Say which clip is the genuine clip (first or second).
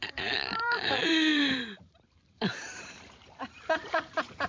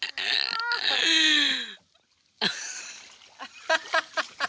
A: second